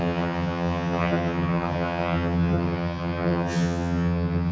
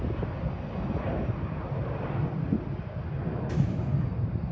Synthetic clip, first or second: first